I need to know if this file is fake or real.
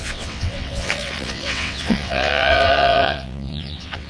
fake